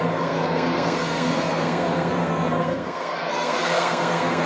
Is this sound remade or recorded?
remade